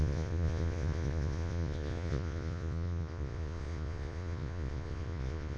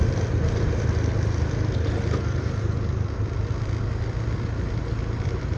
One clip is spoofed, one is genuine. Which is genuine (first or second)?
second